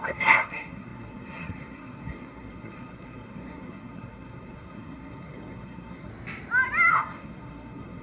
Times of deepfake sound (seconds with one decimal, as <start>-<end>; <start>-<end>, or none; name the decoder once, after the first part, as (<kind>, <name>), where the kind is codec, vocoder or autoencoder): 0.0-6.1 (codec, SNAC); 6.9-8.0

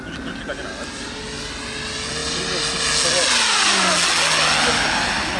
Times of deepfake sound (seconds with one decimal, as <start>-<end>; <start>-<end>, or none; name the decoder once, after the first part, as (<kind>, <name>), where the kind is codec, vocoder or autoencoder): none

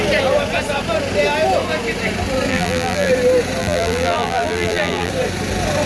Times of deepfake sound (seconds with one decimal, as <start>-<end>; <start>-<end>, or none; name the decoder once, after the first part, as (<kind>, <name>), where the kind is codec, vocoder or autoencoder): 2.5-3.1 (vocoder, BigVGAN v2); 3.6-5.1